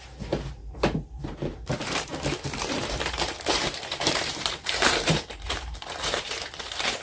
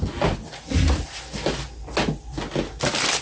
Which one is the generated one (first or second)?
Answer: first